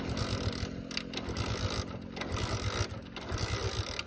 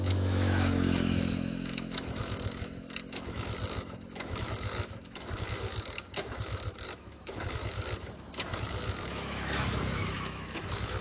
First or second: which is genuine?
first